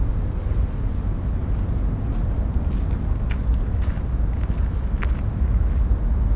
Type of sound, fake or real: real